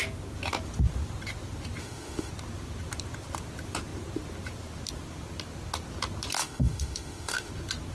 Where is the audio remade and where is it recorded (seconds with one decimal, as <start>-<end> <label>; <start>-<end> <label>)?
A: 0.0-1.8 recorded; 1.8-2.3 remade; 2.3-6.4 recorded; 6.4-7.5 remade; 7.5-7.9 recorded